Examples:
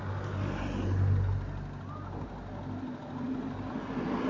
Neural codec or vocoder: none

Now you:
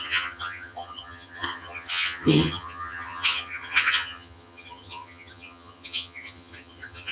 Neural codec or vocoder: vocoder, HiFi-GAN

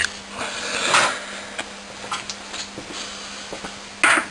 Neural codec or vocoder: none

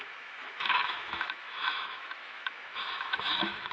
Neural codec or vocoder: autoencoder, DAC-VAE